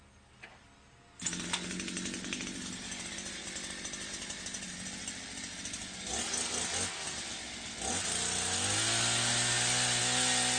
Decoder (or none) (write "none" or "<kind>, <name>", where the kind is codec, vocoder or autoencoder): none